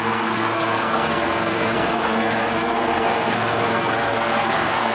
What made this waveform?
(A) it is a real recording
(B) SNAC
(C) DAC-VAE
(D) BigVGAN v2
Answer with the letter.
B